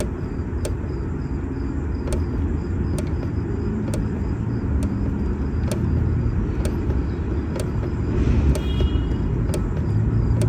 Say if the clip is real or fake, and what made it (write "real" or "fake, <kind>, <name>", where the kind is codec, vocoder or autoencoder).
real